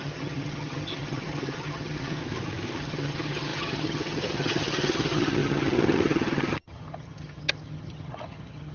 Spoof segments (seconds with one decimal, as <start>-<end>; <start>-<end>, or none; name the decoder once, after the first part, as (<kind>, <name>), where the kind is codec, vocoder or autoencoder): 0.0-2.2 (vocoder, HiFi-GAN); 2.8-8.7